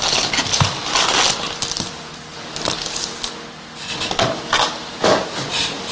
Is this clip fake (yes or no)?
no